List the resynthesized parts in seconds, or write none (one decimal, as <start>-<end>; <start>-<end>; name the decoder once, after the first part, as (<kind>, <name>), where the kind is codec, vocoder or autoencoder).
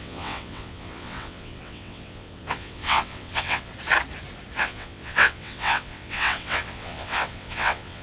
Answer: 0.0-3.7 (vocoder, WaveNeXt); 4.6-8.0